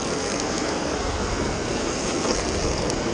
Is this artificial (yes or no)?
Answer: yes